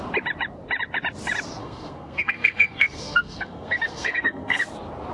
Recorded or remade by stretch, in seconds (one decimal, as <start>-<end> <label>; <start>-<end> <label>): 0.0-1.6 recorded; 1.6-4.6 remade; 4.6-5.1 recorded